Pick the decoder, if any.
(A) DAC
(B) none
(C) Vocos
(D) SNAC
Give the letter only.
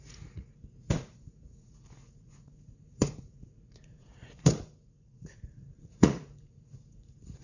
C